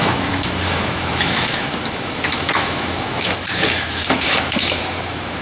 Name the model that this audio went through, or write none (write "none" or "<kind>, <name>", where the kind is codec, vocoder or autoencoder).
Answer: autoencoder, DAC-VAE